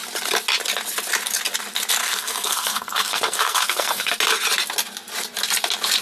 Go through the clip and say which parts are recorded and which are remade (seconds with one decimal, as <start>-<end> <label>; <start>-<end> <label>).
0.0-2.0 recorded; 2.0-4.1 remade; 4.1-6.0 recorded